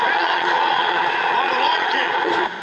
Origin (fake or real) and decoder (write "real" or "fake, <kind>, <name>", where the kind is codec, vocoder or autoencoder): fake, vocoder, Vocos